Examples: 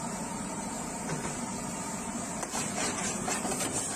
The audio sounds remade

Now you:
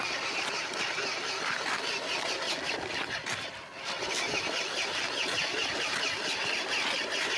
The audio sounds recorded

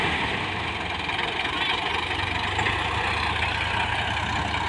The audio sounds recorded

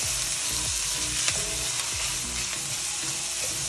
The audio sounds recorded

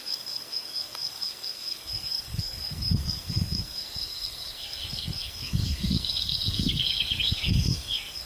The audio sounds remade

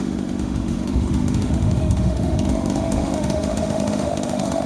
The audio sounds remade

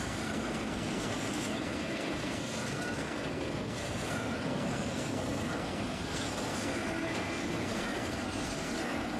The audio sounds remade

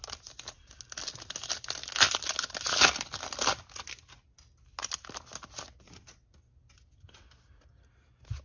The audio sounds recorded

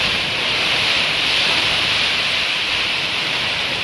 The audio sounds remade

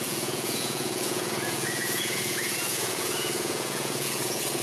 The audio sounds remade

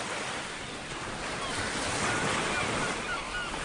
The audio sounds recorded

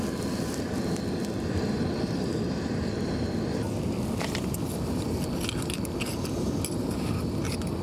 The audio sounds recorded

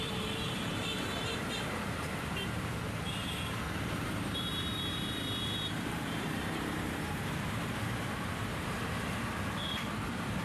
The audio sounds remade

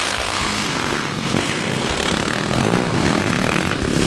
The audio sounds remade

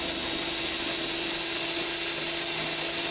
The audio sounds recorded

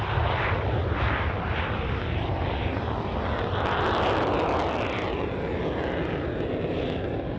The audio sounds recorded